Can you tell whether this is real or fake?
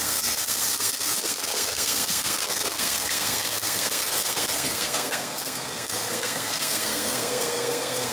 fake